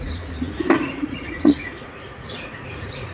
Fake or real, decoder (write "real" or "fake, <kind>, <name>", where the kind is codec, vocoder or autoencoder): fake, vocoder, Vocos